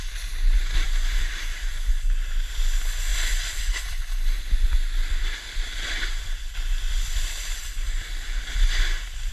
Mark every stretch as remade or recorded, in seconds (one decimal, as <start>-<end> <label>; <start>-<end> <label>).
0.0-3.1 recorded; 3.1-4.5 remade; 4.5-5.0 recorded; 5.0-7.7 remade; 7.7-9.3 recorded